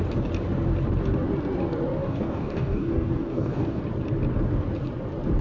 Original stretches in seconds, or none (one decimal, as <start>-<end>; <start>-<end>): 0.0-2.0; 3.8-5.4